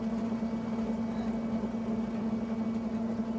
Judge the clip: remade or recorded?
recorded